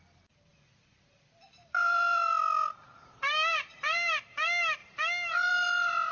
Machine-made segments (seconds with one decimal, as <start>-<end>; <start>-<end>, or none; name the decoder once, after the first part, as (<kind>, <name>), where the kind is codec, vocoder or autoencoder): 0.5-4.2 (vocoder, BigVGAN v2)